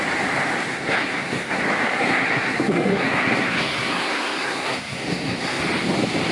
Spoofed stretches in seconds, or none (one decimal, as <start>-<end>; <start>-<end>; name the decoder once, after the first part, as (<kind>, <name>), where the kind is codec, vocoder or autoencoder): 0.7-1.6 (codec, SNAC); 2.0-5.6